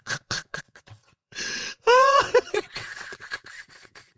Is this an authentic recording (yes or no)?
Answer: no